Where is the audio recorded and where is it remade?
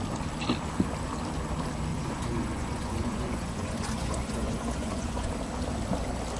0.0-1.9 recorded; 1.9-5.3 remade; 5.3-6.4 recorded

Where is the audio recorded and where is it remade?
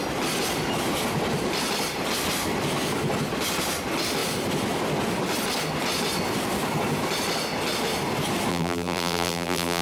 0.0-8.5 recorded; 8.5-9.8 remade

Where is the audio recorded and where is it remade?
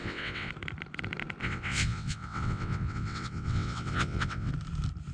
0.0-0.5 remade; 0.5-1.4 recorded; 1.4-4.5 remade; 4.5-5.1 recorded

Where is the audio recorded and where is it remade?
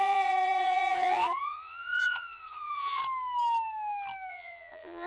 0.0-3.0 remade; 3.0-4.3 recorded; 4.3-5.1 remade